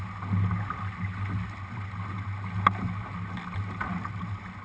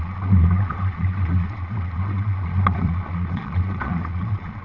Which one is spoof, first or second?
second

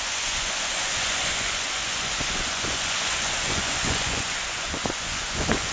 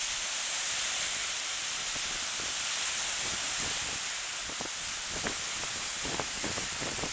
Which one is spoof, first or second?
first